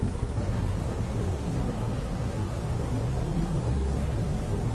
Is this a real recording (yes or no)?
no